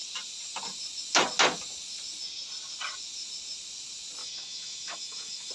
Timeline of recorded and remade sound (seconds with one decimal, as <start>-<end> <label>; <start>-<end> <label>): 0.0-4.2 recorded; 4.2-5.5 remade